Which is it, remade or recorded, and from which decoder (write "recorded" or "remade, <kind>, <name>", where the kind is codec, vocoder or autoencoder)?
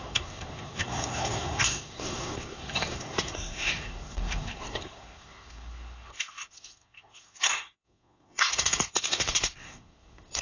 remade, codec, SNAC